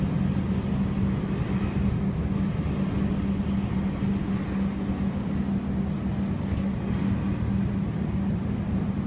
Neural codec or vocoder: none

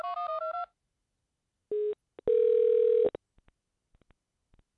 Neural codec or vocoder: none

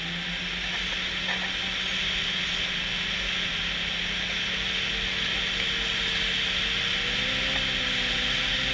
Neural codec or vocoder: none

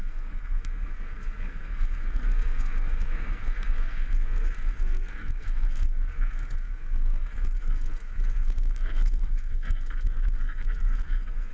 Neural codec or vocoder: codec, SNAC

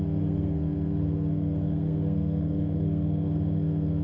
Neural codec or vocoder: codec, SNAC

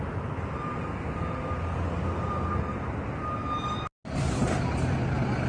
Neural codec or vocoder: none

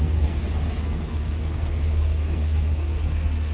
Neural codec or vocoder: codec, SNAC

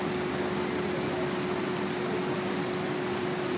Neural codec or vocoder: none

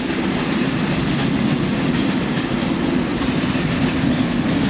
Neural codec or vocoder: none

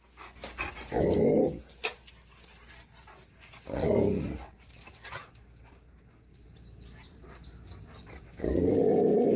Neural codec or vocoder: none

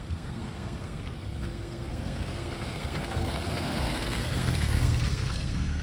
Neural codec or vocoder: codec, SNAC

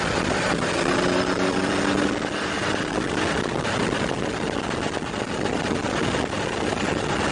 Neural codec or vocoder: none